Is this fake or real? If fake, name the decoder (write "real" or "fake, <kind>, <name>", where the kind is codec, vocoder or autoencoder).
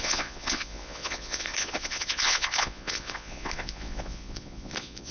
fake, vocoder, Vocos